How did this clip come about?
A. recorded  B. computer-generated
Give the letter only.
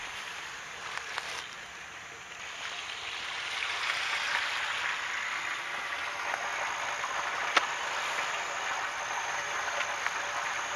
A